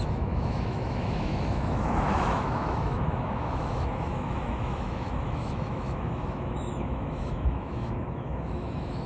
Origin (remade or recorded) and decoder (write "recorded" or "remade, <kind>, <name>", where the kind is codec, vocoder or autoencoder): remade, autoencoder, DAC-VAE